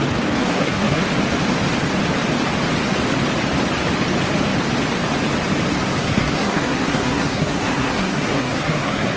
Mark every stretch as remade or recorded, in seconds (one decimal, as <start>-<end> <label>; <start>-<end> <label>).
0.0-0.4 recorded; 0.4-1.0 remade; 1.0-6.0 recorded; 6.0-9.2 remade